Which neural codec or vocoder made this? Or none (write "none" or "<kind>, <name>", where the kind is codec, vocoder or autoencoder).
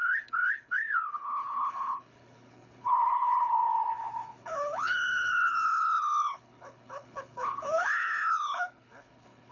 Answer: codec, HILCodec